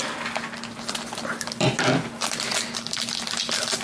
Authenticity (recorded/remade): recorded